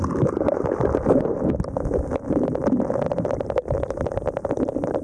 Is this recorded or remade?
remade